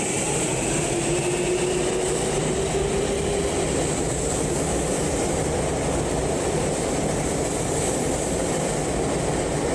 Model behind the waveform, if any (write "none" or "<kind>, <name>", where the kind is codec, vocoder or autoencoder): none